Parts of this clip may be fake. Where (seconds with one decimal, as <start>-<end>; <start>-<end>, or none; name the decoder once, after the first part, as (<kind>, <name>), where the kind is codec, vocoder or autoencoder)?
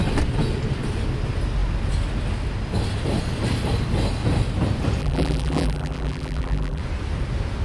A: 5.0-6.8 (vocoder, BigVGAN v2)